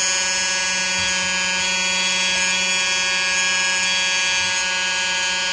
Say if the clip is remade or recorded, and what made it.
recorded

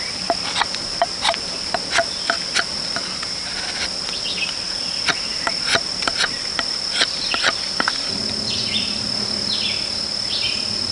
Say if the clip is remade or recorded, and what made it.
recorded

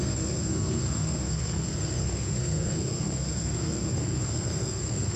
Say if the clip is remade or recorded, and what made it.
remade, codec, SNAC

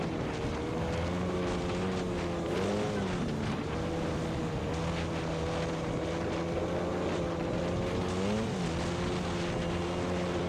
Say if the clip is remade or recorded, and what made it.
recorded